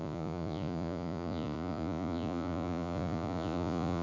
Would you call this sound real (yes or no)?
no